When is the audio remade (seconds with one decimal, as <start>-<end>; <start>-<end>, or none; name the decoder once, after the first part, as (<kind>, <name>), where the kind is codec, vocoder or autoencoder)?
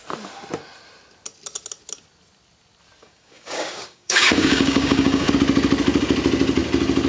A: 3.0-5.3 (codec, DAC)